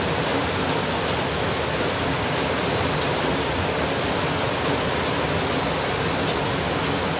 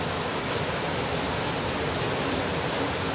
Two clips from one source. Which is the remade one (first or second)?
second